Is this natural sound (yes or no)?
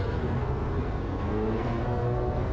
no